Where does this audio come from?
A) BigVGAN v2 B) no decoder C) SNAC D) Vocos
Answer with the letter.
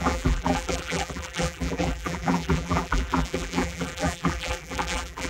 A